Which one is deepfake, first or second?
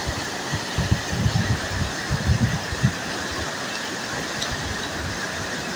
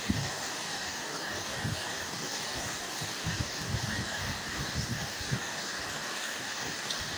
second